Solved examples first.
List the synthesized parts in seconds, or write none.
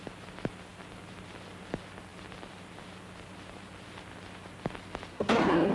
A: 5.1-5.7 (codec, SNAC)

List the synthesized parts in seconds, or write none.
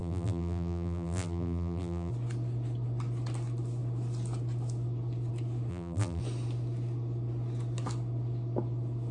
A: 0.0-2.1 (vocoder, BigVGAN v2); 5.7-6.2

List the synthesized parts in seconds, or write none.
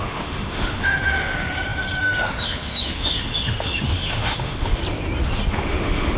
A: 0.0-4.8 (autoencoder, DAC-VAE); 5.5-6.2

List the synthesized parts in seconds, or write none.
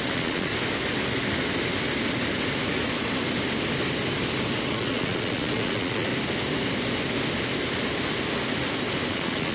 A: 0.0-0.5 (vocoder, Vocos); 4.7-6.1; 9.1-9.5